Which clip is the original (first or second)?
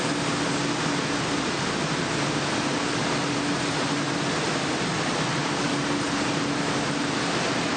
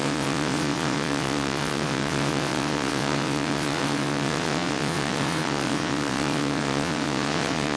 first